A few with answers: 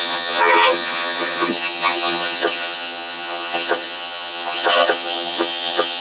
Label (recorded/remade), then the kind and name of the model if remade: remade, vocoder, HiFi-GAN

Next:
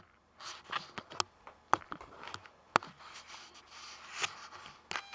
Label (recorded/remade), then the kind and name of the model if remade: recorded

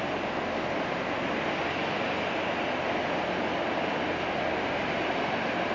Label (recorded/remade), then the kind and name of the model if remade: recorded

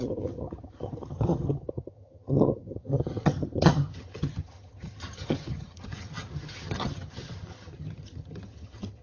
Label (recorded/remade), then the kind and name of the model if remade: remade, vocoder, HiFi-GAN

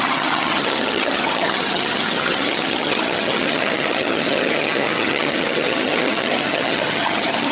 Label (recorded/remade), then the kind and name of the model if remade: remade, vocoder, HiFi-GAN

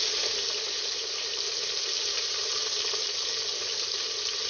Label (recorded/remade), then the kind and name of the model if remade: recorded